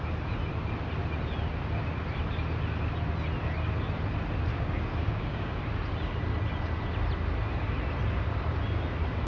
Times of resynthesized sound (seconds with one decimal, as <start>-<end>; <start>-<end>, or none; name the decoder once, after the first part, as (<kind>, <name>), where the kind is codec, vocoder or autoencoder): 4.5-5.6 (codec, DAC)